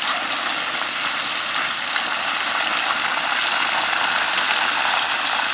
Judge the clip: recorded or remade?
recorded